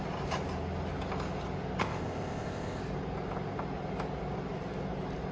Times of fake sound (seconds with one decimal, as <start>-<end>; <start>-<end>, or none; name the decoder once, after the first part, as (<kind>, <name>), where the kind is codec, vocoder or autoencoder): 1.8-2.8 (codec, ZipCodec)